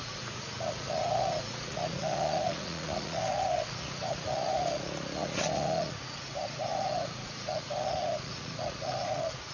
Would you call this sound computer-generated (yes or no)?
yes